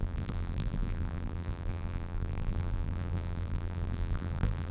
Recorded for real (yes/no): no